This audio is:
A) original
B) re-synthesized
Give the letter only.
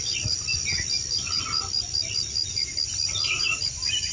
A